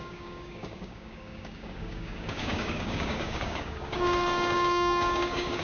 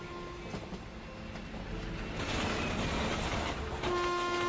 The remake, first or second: first